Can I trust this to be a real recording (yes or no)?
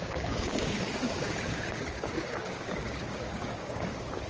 no